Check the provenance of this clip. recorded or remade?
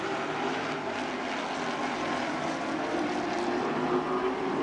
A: recorded